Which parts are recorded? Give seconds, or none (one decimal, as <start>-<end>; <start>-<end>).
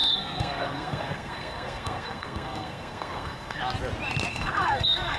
3.6-4.3